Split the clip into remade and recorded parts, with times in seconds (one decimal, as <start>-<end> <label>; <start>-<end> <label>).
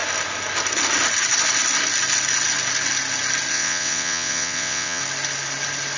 0.0-3.5 recorded; 3.5-5.0 remade; 5.0-6.0 recorded